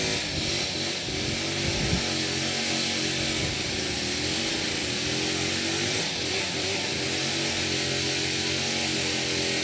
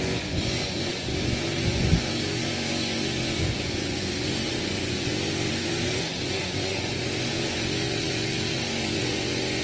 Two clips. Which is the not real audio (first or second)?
second